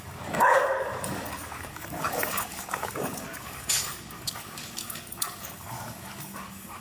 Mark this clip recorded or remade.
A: remade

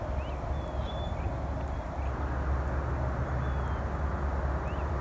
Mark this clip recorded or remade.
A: recorded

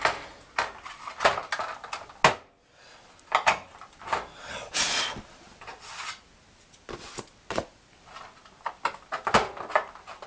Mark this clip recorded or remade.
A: recorded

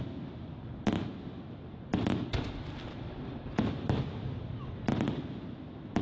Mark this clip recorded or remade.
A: recorded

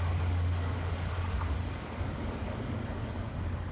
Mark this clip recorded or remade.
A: remade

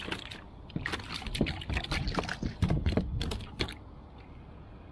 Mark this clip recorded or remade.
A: recorded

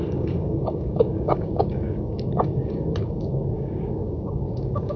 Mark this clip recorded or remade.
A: remade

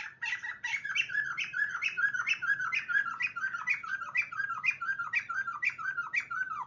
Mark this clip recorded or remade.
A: recorded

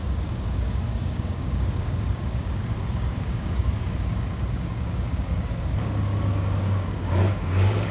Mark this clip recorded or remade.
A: remade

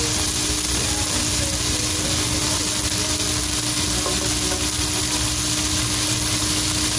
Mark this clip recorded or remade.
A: recorded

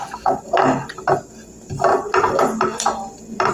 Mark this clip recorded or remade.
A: recorded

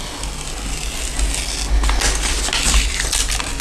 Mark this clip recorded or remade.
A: recorded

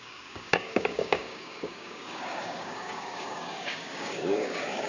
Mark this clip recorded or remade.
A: remade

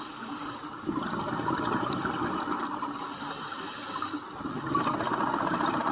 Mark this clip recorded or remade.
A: recorded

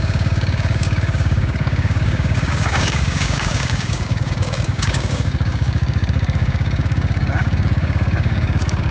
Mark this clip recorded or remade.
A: remade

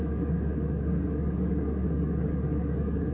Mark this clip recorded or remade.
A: remade